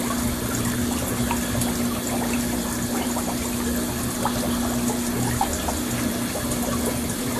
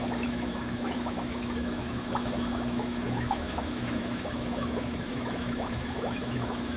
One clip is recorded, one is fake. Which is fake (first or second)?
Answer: second